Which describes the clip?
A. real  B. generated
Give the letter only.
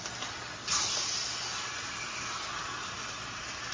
A